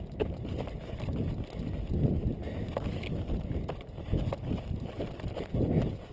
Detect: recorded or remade recorded